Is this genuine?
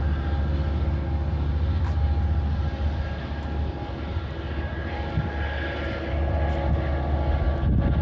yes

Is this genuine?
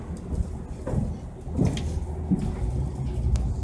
yes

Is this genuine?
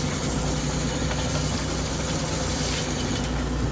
no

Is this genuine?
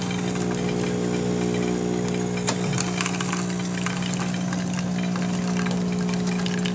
yes